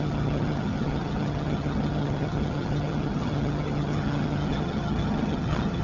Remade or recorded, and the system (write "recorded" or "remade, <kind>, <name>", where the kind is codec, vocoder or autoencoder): remade, vocoder, HiFi-GAN